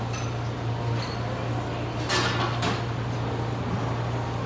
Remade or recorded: recorded